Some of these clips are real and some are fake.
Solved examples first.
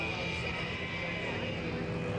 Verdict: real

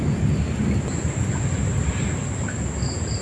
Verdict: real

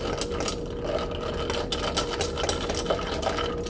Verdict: real